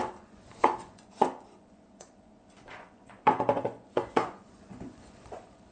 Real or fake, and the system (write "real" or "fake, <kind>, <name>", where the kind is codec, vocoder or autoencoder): fake, vocoder, Vocos